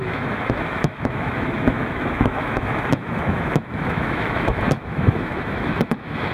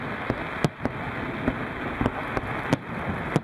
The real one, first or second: second